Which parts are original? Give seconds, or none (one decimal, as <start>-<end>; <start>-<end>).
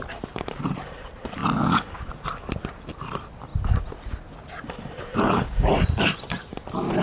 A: 1.4-2.5; 3.5-4.7